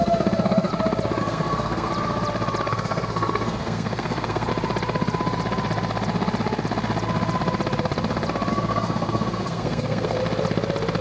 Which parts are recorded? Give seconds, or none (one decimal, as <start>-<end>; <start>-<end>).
0.7-1.2; 1.9-2.7; 4.5-8.5; 10.2-11.0